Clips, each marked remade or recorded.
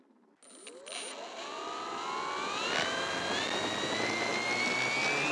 recorded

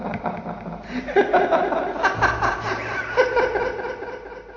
recorded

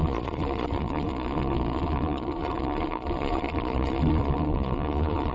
remade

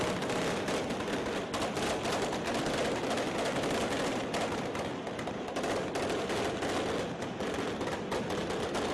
recorded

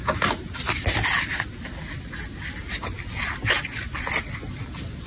recorded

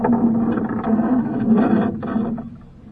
recorded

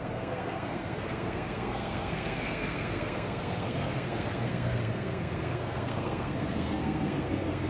remade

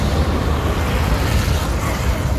recorded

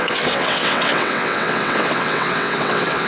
remade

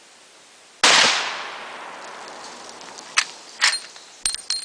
recorded